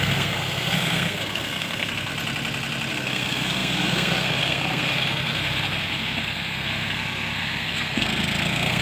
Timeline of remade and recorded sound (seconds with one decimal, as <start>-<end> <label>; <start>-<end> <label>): 0.0-2.1 remade; 2.1-2.9 recorded; 2.9-8.8 remade